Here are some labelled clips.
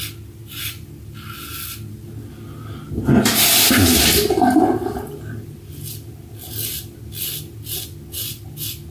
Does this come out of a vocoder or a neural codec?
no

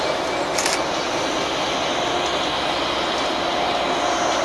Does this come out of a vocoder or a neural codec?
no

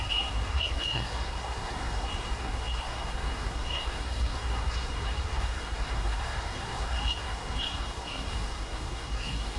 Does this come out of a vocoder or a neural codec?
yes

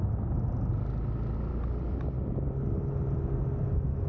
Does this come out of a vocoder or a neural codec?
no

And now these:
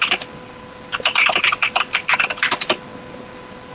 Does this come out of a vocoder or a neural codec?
no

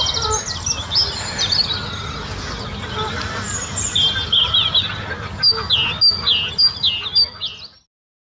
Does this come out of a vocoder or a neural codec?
no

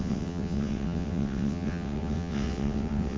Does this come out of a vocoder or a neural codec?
yes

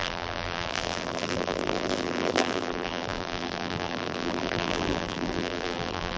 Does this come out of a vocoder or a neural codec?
yes